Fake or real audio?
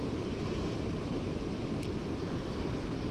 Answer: real